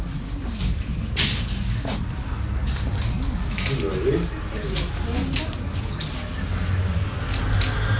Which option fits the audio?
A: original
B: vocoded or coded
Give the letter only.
A